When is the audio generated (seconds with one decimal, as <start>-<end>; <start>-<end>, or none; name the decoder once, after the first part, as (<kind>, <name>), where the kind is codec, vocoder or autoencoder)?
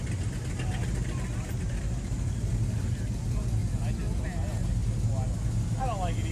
none